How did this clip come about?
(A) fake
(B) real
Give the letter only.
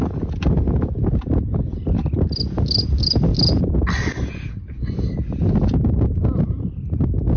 B